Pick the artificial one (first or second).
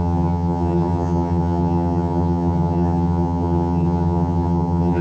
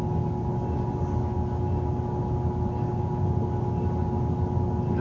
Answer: first